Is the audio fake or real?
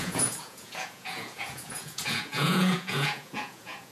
fake